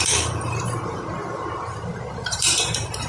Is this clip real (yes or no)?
no